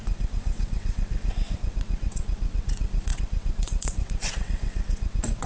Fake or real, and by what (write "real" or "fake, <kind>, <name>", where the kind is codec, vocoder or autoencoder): fake, vocoder, WaveNeXt